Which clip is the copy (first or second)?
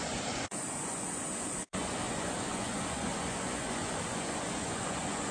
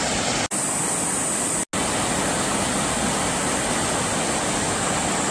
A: first